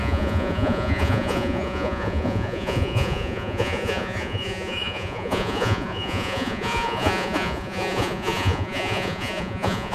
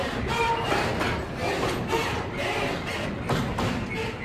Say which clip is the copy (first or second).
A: first